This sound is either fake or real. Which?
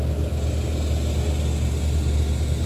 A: real